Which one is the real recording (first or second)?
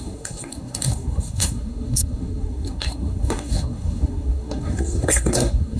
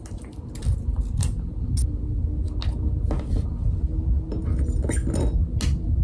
second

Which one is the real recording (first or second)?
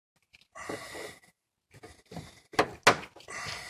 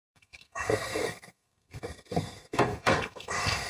first